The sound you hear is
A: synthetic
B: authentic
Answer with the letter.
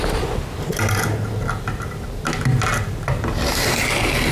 B